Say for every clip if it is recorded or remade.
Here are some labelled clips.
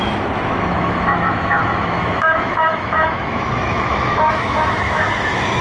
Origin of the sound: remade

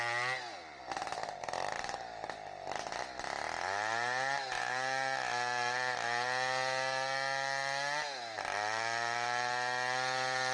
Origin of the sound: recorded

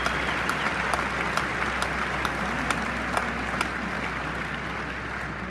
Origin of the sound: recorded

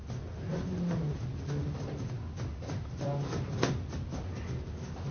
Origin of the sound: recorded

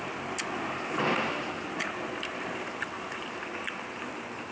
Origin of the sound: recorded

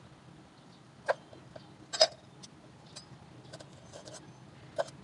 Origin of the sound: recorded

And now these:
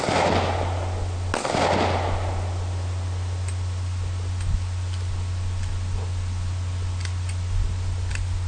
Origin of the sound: recorded